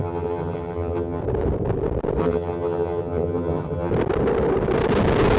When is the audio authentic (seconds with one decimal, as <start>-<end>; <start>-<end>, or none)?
1.2-2.2; 3.9-5.4